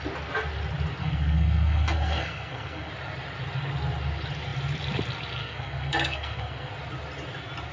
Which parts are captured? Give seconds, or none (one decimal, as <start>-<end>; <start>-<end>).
0.0-1.0; 2.9-5.4; 6.7-7.7